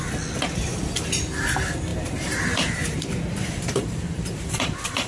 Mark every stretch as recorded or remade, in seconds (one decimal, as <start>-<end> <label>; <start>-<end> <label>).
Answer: 0.0-1.9 recorded; 1.9-5.1 remade